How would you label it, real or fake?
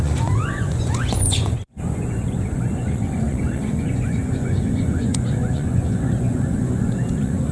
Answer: fake